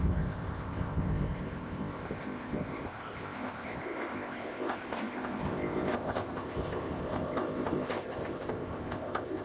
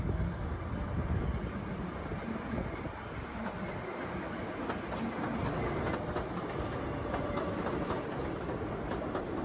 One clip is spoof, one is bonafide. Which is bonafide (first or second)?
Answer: second